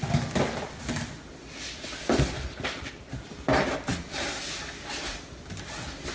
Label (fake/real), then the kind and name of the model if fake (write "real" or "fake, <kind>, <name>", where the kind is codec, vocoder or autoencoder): real